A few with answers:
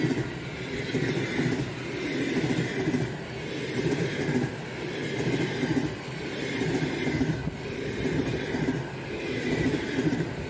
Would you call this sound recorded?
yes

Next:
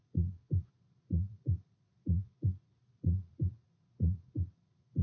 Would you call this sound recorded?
no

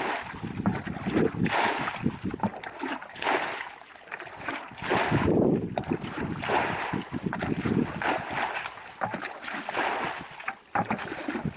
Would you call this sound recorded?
yes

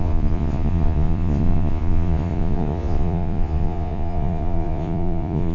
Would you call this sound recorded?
no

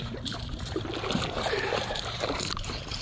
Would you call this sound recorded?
no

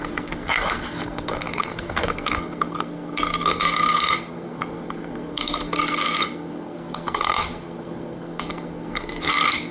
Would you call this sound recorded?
no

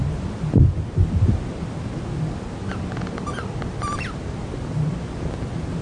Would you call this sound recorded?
yes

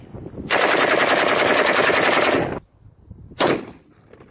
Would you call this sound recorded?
yes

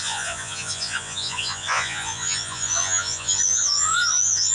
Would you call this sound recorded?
no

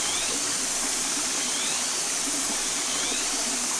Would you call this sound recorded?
yes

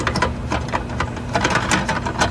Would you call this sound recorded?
yes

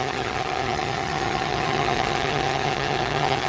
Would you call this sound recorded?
no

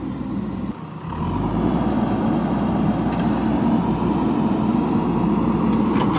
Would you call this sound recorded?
yes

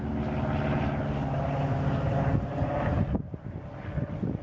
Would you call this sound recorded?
yes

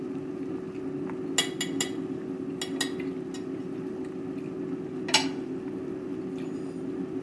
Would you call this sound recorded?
yes